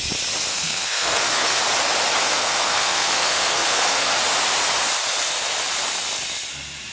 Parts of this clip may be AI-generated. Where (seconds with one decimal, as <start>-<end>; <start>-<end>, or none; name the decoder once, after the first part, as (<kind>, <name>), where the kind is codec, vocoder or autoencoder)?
0.5-1.6 (codec, SNAC); 2.2-4.1